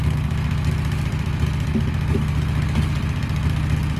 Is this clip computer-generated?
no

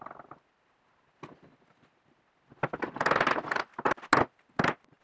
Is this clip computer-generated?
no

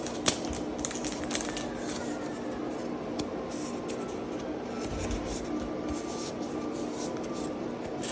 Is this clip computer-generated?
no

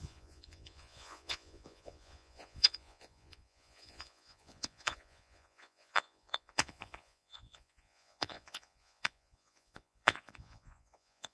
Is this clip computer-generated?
yes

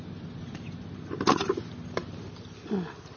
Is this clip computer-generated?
no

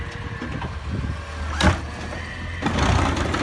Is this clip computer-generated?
no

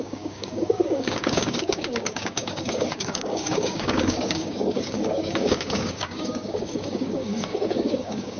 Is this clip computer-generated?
yes